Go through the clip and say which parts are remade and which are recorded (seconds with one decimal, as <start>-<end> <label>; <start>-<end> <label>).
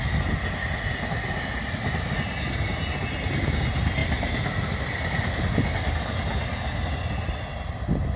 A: 0.0-8.2 recorded